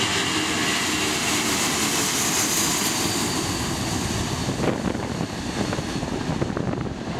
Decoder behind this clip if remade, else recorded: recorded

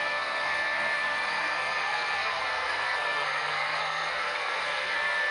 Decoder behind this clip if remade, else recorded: remade, codec, SNAC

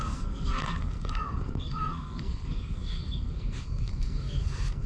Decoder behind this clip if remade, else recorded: remade, codec, SNAC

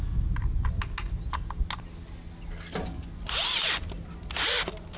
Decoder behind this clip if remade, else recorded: recorded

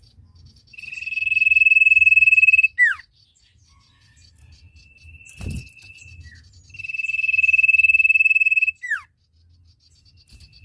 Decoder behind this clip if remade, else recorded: recorded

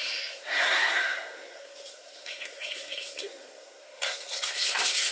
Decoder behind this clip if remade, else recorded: remade, codec, SNAC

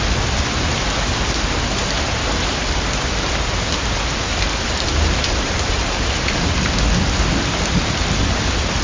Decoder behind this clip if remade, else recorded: recorded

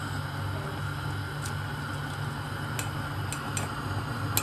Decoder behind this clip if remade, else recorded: recorded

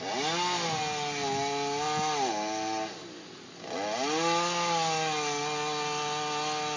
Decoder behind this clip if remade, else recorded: recorded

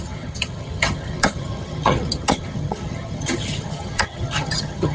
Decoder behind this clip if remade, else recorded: remade, vocoder, HiFi-GAN